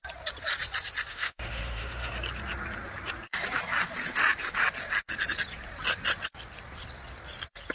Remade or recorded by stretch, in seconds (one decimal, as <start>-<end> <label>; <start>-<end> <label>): 0.0-1.1 recorded; 1.1-2.1 remade; 2.1-7.7 recorded